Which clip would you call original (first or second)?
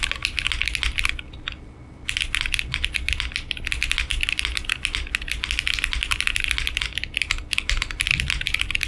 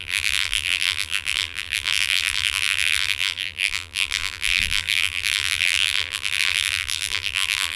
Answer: first